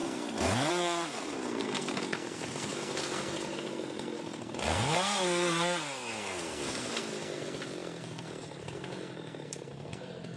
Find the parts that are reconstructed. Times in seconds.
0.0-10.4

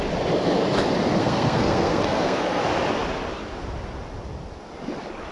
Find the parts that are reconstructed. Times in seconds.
1.2-2.6

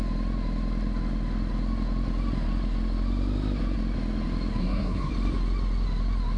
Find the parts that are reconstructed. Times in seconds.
4.6-5.1

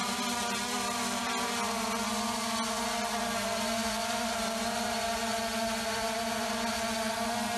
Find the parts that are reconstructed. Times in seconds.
none

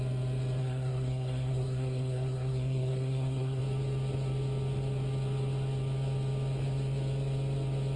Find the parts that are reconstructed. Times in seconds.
0.6-3.6